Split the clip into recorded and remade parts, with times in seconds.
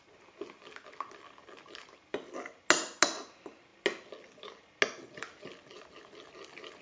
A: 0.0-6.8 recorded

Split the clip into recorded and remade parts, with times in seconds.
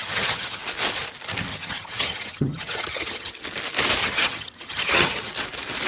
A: 0.0-0.6 remade; 0.6-1.5 recorded; 1.5-3.3 remade; 3.3-4.0 recorded; 4.0-5.3 remade; 5.3-5.9 recorded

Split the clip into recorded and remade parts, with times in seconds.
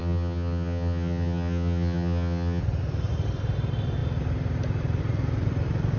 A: 0.0-2.6 remade; 2.6-6.0 recorded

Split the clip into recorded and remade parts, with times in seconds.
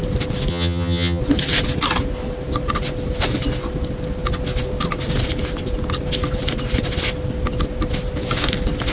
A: 0.0-0.5 recorded; 0.5-1.2 remade; 1.2-8.9 recorded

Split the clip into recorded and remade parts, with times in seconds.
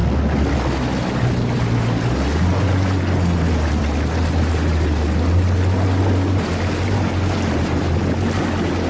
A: 0.0-8.9 recorded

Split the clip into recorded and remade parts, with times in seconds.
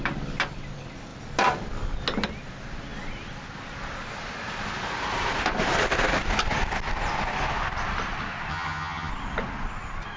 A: 0.0-8.5 recorded; 8.5-9.1 remade; 9.1-10.2 recorded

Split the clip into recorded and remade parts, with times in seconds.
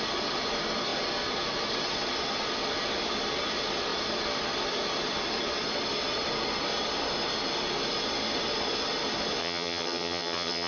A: 0.0-9.4 recorded; 9.4-10.7 remade